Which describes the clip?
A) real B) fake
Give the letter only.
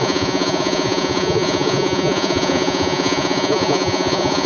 B